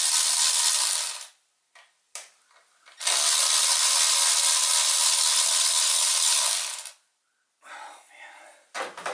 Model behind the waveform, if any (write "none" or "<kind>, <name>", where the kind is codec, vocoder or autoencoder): none